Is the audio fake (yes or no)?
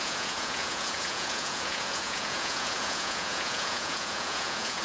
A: yes